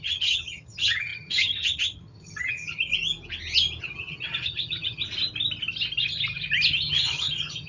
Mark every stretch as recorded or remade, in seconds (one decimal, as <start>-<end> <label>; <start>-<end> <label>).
0.0-2.9 remade; 2.9-3.8 recorded; 3.8-5.0 remade; 5.0-6.7 recorded; 6.7-7.7 remade